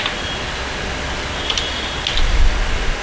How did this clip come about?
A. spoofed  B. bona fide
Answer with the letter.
B